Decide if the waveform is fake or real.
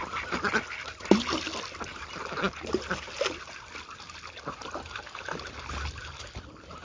real